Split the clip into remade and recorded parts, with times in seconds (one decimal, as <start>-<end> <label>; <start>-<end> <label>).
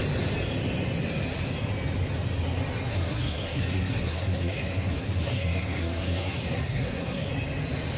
0.0-2.9 recorded; 2.9-7.3 remade; 7.3-8.0 recorded